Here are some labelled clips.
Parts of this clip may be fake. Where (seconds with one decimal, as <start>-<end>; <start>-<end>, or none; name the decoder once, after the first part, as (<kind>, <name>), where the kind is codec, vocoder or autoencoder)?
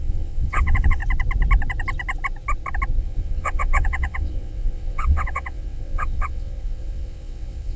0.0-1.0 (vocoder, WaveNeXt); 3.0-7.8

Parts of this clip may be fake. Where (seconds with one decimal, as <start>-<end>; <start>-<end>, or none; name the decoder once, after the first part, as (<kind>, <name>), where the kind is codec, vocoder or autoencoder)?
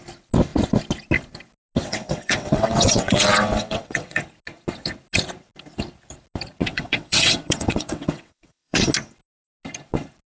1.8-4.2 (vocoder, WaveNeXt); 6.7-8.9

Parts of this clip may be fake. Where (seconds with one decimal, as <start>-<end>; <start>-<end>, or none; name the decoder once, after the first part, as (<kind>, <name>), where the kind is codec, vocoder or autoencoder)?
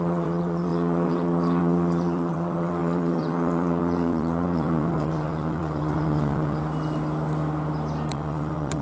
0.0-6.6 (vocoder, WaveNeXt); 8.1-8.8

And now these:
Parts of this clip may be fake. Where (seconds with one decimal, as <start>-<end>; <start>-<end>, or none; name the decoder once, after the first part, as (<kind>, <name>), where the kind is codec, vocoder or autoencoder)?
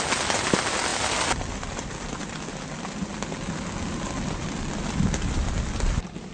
none